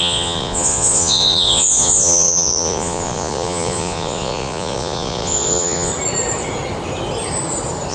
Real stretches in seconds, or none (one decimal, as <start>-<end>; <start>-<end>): 5.9-7.9

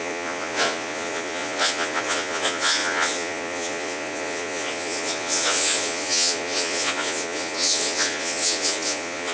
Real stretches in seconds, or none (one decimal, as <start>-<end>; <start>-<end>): none